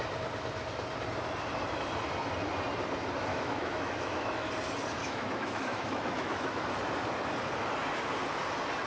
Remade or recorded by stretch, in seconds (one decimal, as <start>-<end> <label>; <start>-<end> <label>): 0.0-3.3 recorded; 3.3-4.5 remade; 4.5-5.0 recorded; 5.0-6.6 remade; 6.6-8.9 recorded